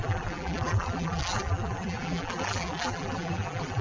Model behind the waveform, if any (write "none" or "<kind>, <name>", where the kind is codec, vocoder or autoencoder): vocoder, BigVGAN v2